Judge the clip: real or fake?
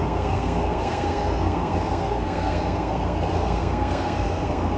fake